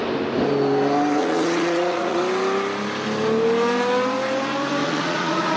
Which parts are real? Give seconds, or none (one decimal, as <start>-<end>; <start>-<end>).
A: 0.0-1.2; 2.2-4.8